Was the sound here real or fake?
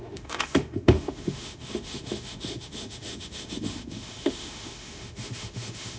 fake